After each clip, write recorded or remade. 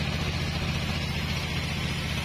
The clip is recorded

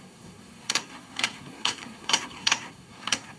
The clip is remade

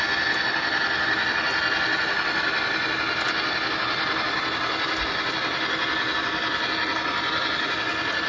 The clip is recorded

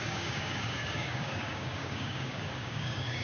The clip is remade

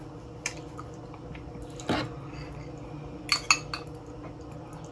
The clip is recorded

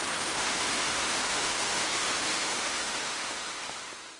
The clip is remade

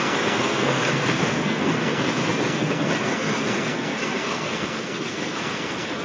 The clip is remade